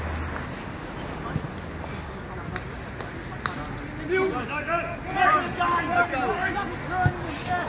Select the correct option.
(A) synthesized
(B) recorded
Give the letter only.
B